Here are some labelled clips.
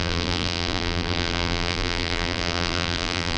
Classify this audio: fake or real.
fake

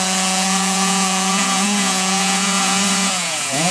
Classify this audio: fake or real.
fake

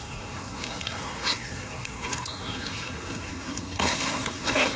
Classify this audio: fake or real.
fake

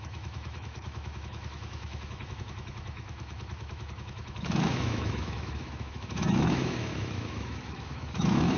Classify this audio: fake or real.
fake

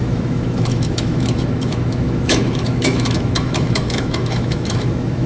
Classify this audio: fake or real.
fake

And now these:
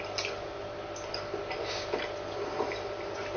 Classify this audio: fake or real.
real